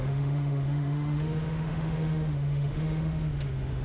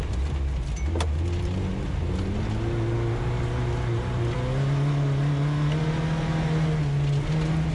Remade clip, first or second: first